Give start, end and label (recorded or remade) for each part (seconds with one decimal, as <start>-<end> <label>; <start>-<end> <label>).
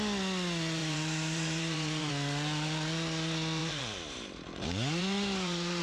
0.0-0.8 recorded; 0.8-2.1 remade; 2.1-3.6 recorded; 3.6-5.8 remade